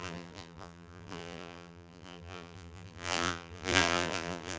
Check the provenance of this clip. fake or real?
fake